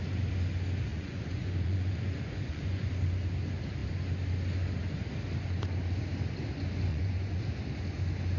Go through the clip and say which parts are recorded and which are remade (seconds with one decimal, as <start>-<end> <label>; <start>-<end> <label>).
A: 0.0-0.9 recorded; 0.9-2.9 remade; 2.9-6.9 recorded; 6.9-7.4 remade; 7.4-8.4 recorded